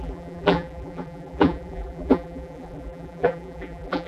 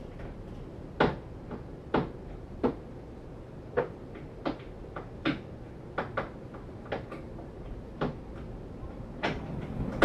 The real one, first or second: second